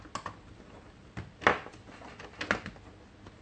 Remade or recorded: recorded